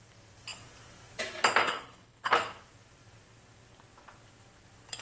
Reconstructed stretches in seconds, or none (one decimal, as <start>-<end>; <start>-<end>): 1.6-2.3

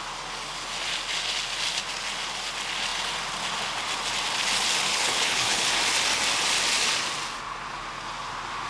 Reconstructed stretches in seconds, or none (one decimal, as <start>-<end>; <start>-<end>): 4.9-5.7

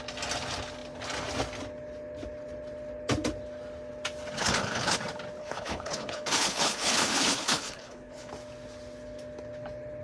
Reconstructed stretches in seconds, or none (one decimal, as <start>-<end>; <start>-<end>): 4.4-5.0; 5.4-8.3

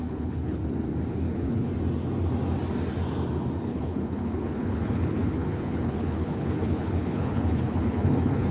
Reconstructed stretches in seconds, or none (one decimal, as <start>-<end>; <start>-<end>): 0.0-0.6; 1.1-1.7; 3.6-8.5

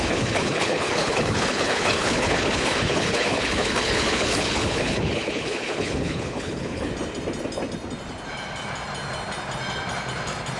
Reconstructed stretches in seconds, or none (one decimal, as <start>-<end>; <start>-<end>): 0.0-6.9

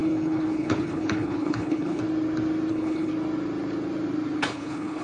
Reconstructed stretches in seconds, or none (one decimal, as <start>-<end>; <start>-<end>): 0.0-2.0; 2.7-3.1; 4.4-5.0

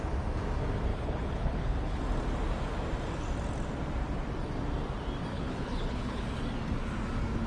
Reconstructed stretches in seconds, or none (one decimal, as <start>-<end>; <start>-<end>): 0.9-2.0; 5.3-6.2